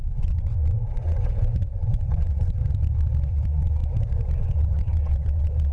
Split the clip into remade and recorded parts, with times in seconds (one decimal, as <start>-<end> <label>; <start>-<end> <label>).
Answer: 0.0-2.6 remade; 2.6-3.3 recorded; 3.3-3.8 remade; 3.8-4.4 recorded; 4.4-5.7 remade